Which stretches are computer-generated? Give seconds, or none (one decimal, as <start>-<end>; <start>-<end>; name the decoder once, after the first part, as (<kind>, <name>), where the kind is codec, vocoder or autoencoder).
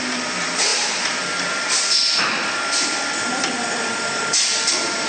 0.0-5.1 (vocoder, BigVGAN v2)